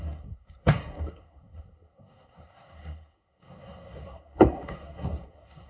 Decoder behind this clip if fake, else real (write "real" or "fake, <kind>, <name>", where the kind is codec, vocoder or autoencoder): fake, codec, SNAC